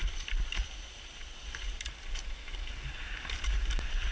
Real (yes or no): no